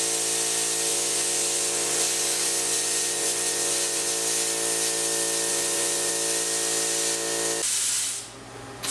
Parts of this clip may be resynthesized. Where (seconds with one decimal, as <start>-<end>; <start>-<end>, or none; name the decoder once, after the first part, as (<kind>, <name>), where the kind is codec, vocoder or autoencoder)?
0.9-4.1 (vocoder, Vocos); 5.5-6.1